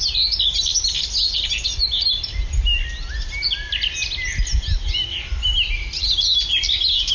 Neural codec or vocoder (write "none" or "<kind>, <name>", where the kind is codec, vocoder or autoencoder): none